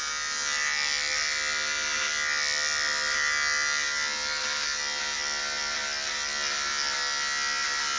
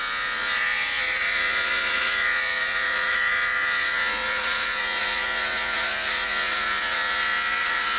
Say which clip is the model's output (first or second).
second